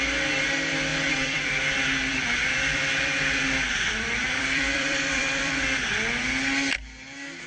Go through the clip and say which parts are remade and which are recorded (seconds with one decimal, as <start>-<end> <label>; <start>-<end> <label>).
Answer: 0.0-0.9 recorded; 0.9-1.5 remade; 1.5-2.1 recorded; 2.1-5.8 remade; 5.8-7.5 recorded